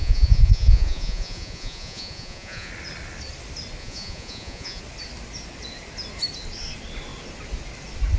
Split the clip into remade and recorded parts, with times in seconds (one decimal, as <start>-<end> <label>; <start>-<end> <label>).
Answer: 0.0-2.7 remade; 2.7-3.8 recorded; 3.8-4.8 remade; 4.8-8.2 recorded